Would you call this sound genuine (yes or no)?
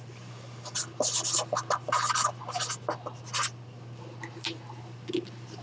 yes